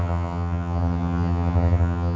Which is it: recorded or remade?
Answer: remade